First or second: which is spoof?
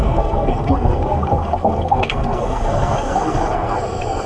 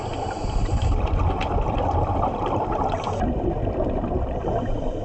first